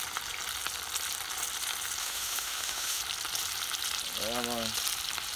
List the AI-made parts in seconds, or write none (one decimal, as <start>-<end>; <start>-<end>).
2.0-3.0